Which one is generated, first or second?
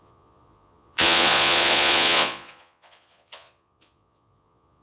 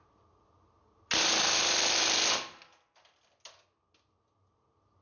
first